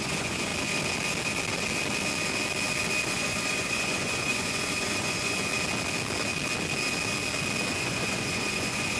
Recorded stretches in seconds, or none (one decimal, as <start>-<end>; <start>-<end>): 0.5-3.1; 5.5-7.7

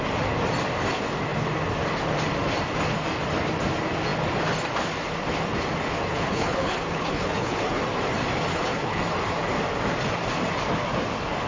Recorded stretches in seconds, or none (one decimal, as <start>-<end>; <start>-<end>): 0.0-6.1; 7.8-8.5; 9.0-11.5